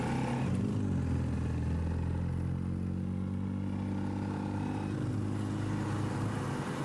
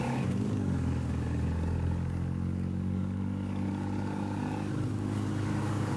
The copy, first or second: second